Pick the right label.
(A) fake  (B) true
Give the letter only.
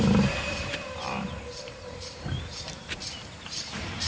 A